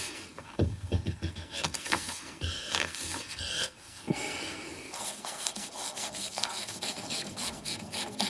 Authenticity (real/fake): fake